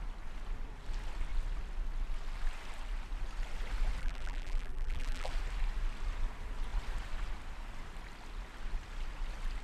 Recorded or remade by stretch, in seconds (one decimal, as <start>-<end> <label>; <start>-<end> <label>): 0.0-4.0 recorded; 4.0-5.3 remade; 5.3-9.6 recorded